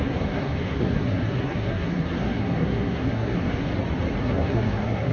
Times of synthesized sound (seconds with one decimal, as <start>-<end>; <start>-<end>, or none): 0.0-3.7; 4.2-5.1